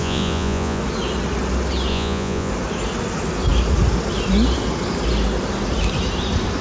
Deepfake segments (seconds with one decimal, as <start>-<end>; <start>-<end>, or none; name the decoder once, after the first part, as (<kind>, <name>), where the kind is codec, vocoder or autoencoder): 0.0-0.8 (vocoder, Vocos); 1.9-2.5